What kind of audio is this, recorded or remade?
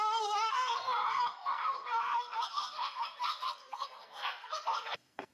remade